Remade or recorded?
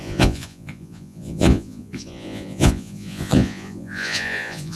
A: remade